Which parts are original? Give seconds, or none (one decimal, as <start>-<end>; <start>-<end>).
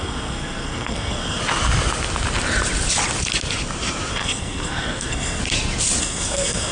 1.4-4.1; 5.4-6.0